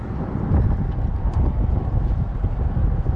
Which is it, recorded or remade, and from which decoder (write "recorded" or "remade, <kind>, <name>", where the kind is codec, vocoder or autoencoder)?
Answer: recorded